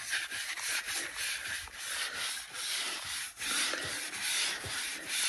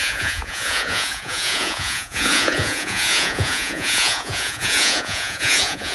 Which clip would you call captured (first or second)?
first